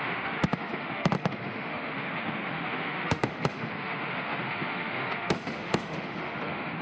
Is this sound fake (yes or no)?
yes